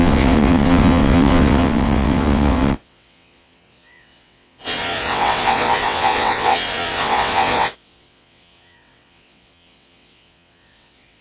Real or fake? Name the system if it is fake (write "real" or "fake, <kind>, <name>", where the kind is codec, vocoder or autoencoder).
fake, vocoder, WaveNeXt